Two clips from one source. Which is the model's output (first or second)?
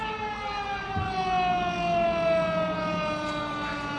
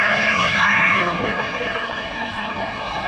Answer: second